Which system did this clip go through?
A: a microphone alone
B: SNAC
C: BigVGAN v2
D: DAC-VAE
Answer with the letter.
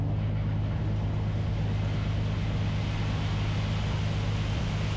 A